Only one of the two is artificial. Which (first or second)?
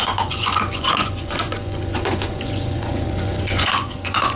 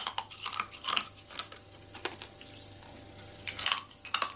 first